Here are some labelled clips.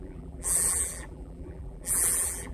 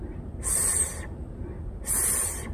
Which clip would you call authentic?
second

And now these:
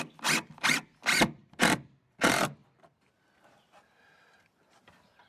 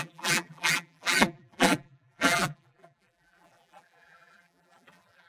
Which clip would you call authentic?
first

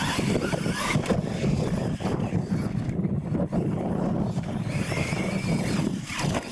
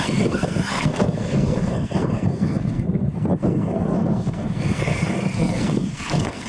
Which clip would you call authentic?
first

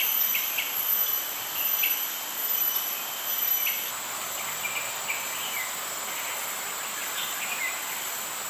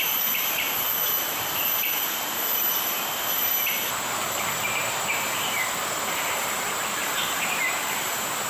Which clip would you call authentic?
first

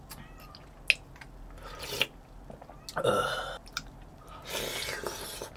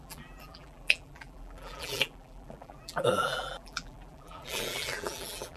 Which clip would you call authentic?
first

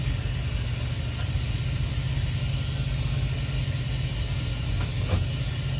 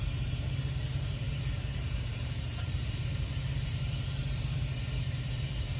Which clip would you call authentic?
first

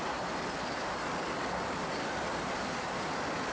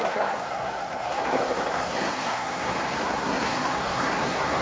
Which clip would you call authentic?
first